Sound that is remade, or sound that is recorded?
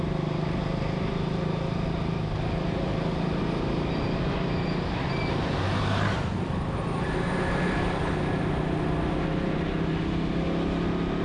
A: recorded